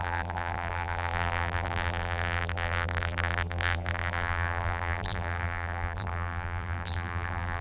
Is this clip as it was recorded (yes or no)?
no